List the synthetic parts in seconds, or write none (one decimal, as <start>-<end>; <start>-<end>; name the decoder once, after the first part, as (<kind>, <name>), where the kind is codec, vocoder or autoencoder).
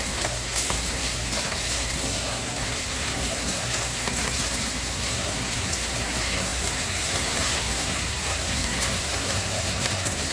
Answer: 0.0-10.3 (codec, SNAC)